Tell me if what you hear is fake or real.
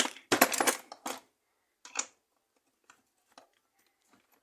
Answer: real